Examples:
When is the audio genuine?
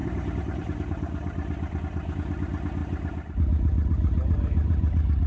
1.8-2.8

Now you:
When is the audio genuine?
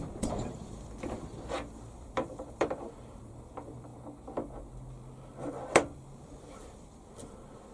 3.9-5.5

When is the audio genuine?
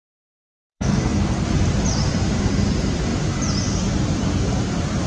3.1-5.1